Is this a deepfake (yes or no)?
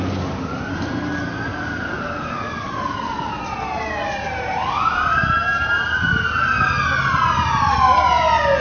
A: no